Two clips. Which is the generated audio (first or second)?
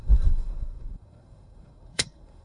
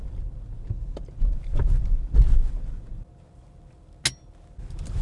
first